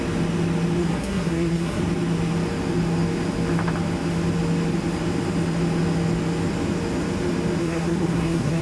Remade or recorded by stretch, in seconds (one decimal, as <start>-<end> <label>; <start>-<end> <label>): 0.0-0.8 recorded; 0.8-1.8 remade; 1.8-7.6 recorded; 7.6-8.6 remade